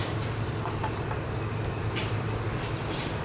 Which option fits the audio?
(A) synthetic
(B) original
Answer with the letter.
A